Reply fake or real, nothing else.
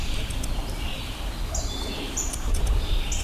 real